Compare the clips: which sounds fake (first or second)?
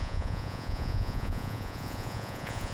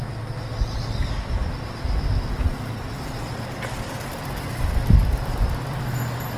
first